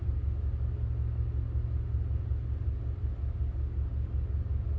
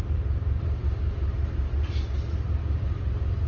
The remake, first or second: second